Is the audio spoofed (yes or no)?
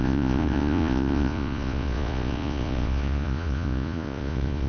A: yes